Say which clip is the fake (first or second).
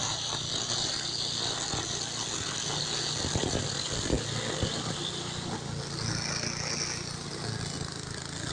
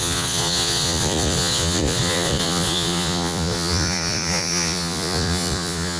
second